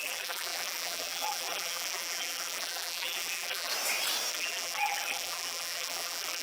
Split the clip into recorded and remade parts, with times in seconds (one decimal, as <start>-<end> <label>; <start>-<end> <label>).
0.0-3.7 remade; 3.7-4.3 recorded; 4.3-6.4 remade